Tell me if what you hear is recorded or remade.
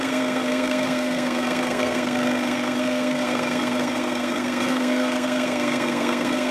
remade